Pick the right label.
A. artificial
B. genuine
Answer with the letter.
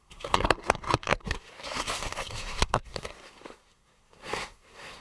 A